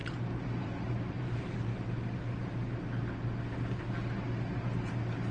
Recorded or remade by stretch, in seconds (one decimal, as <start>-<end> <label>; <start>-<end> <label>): 0.0-0.6 recorded; 0.6-1.7 remade; 1.7-5.3 recorded